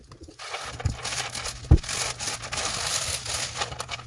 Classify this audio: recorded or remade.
recorded